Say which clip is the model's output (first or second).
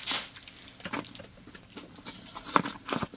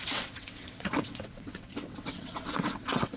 second